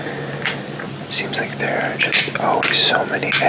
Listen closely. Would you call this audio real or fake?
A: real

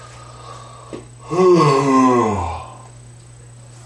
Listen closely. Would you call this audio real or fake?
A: real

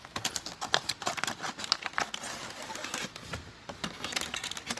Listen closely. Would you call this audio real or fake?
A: real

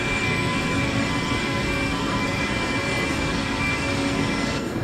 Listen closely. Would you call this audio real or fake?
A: fake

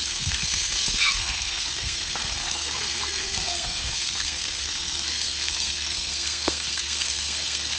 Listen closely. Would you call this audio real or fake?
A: fake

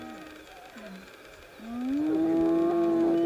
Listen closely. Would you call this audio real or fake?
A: real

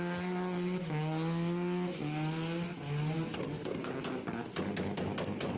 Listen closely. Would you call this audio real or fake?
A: real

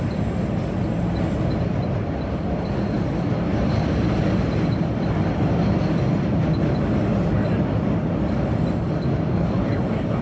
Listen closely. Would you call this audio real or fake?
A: real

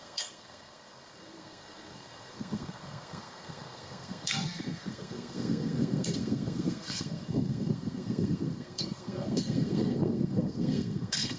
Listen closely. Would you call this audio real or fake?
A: fake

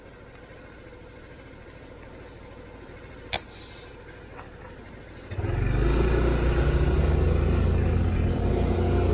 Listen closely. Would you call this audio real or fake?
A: real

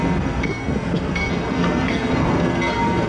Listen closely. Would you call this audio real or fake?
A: fake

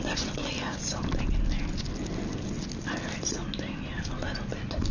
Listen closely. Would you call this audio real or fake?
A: real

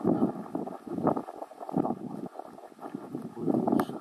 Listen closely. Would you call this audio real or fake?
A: real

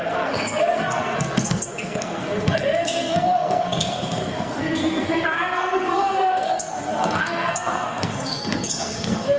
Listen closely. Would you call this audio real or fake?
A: fake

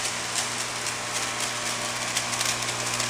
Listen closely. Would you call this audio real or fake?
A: real